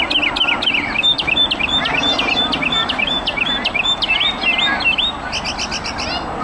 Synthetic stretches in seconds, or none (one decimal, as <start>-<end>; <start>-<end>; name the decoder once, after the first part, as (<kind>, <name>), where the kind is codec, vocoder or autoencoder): 2.8-4.1 (vocoder, BigVGAN v2)